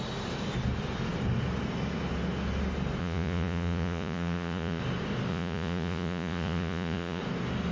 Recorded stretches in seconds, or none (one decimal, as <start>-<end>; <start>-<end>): 0.0-3.0; 4.8-5.3; 7.2-7.7